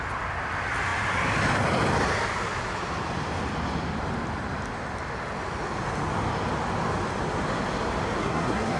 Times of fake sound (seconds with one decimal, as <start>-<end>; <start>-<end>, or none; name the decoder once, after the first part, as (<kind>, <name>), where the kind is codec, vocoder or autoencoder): 8.2-8.8 (codec, SNAC)